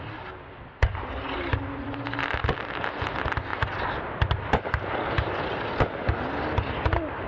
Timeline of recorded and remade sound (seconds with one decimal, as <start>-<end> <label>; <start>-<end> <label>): 0.0-7.3 recorded